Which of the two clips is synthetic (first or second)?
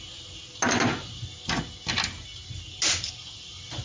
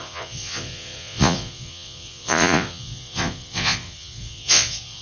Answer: second